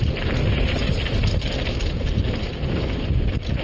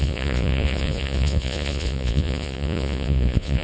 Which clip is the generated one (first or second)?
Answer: second